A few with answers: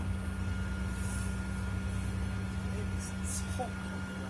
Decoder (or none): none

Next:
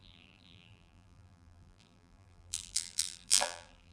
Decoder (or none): vocoder, BigVGAN v2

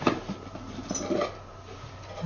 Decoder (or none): none